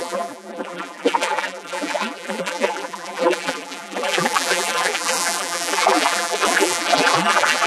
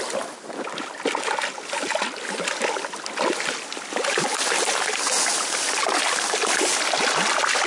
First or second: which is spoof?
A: first